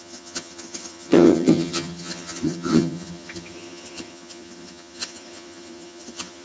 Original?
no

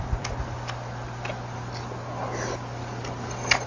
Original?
yes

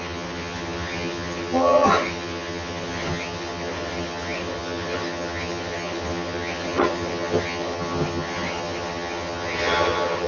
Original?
no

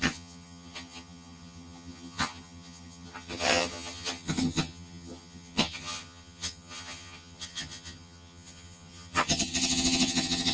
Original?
no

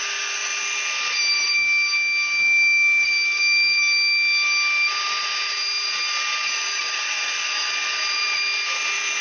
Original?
yes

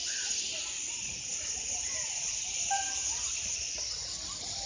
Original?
yes